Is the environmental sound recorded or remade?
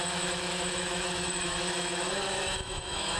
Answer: remade